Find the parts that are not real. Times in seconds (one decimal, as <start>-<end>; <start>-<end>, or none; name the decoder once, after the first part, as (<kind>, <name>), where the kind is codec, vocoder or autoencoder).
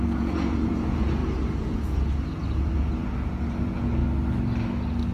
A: 0.0-4.0 (vocoder, Vocos)